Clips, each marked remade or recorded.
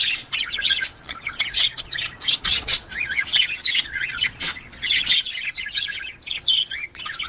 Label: remade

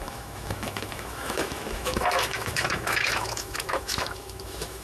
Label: remade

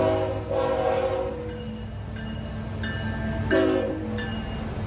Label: recorded